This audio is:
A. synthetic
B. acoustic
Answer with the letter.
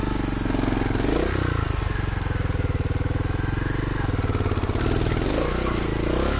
B